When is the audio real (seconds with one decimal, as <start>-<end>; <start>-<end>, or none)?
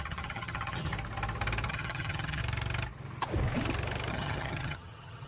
0.9-1.7; 2.4-4.1